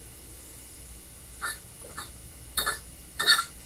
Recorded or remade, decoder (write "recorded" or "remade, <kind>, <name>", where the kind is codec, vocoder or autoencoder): remade, autoencoder, DAC-VAE